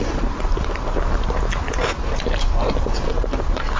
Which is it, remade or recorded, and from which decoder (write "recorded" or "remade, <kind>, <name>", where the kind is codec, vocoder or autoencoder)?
recorded